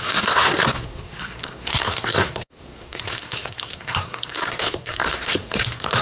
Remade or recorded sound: remade